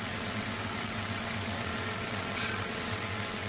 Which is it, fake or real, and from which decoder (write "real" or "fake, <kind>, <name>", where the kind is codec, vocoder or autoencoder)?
fake, vocoder, WaveNeXt